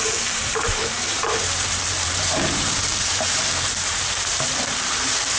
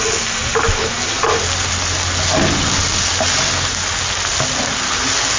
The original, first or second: second